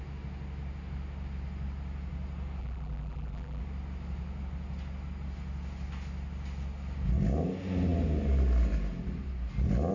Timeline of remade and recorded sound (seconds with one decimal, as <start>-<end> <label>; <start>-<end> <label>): 0.0-2.6 recorded; 2.6-3.6 remade; 3.6-9.9 recorded